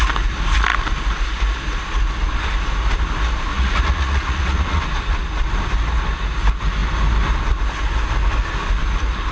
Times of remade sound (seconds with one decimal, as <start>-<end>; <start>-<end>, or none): 3.5-4.8